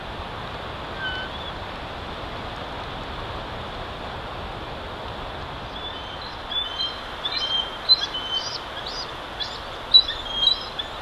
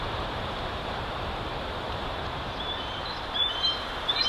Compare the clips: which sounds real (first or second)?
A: first